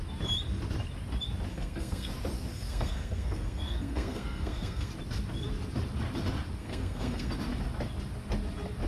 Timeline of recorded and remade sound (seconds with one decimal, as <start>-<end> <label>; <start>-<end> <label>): 0.0-1.5 recorded; 1.5-2.1 remade; 2.1-2.5 recorded; 2.5-4.9 remade; 4.9-6.6 recorded; 6.6-7.3 remade; 7.3-8.9 recorded